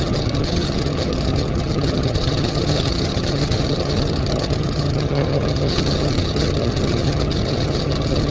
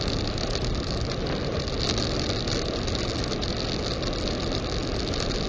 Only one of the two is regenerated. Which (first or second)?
first